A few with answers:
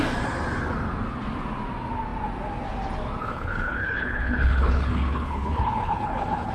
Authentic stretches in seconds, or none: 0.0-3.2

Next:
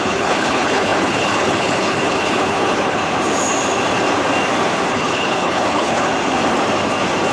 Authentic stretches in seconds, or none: 3.0-4.9; 6.1-7.3

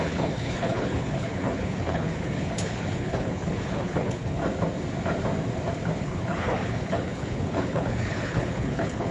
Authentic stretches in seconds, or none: 4.4-6.0